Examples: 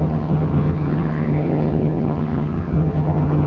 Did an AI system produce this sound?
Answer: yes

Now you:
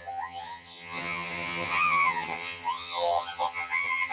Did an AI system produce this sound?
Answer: yes